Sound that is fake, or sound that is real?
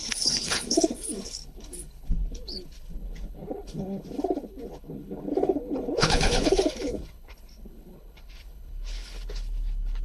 fake